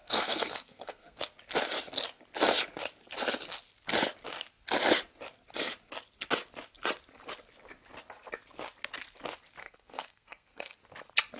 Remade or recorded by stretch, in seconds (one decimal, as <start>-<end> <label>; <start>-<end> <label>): 0.0-1.2 remade; 1.2-9.6 recorded; 9.6-10.8 remade; 10.8-11.4 recorded